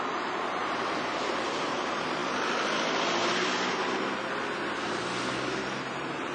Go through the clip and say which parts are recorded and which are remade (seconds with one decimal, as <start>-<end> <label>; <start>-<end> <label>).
0.0-0.6 remade; 0.6-1.3 recorded; 1.3-2.2 remade; 2.2-5.6 recorded; 5.6-6.3 remade